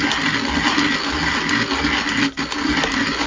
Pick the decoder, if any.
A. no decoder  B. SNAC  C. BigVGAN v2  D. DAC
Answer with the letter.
A